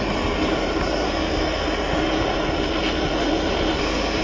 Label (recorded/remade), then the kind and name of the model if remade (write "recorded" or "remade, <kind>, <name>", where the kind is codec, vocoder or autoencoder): recorded